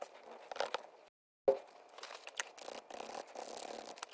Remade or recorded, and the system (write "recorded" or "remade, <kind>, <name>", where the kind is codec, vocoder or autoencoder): recorded